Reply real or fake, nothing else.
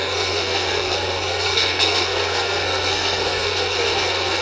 fake